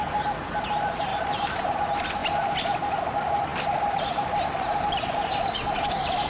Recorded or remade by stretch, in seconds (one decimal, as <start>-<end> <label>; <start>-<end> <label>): 0.0-1.1 recorded; 1.1-1.8 remade; 1.8-6.3 recorded